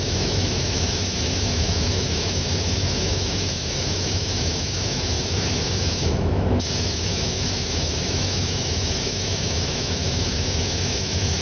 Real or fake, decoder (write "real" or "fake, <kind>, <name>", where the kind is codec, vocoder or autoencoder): fake, autoencoder, DAC-VAE